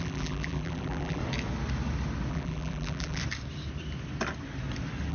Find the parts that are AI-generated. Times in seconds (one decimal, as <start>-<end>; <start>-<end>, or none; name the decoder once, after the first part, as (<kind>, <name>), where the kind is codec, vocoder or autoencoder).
0.0-1.2 (vocoder, BigVGAN v2); 2.3-3.2